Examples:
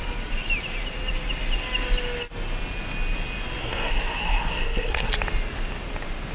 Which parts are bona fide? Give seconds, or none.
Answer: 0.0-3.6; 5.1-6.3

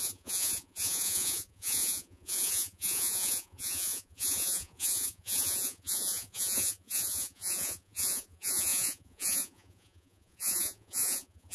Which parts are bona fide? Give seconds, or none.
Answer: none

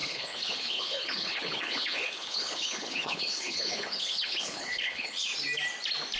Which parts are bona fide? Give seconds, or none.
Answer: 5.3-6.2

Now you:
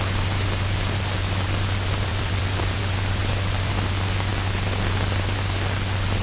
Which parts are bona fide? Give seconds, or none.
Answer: 0.0-2.1; 2.8-3.2; 3.7-6.2

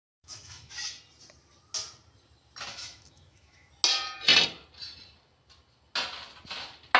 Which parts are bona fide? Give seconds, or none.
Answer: 0.7-2.7; 3.7-7.0

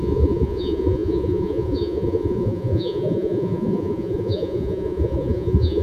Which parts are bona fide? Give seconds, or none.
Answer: none

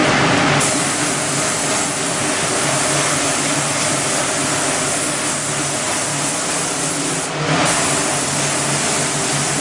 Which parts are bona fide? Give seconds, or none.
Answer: 0.0-9.6